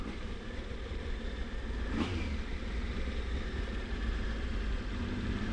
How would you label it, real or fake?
fake